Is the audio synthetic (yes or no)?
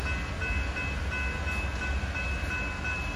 no